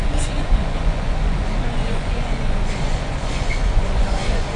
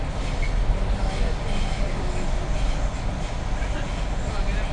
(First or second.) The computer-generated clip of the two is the first